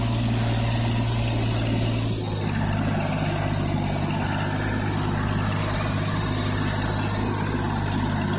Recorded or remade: recorded